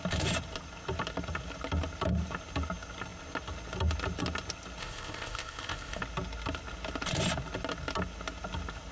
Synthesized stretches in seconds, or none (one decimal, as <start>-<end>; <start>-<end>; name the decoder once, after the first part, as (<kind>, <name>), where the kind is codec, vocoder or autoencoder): 4.8-6.0 (codec, ZipCodec)